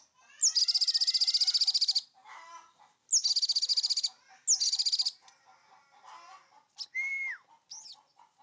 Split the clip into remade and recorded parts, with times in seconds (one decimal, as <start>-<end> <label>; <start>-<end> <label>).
0.0-8.4 recorded